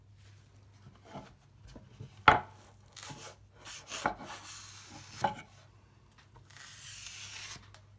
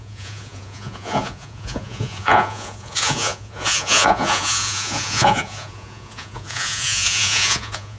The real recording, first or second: first